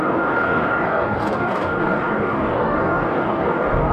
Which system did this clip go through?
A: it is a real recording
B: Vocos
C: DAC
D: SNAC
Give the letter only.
C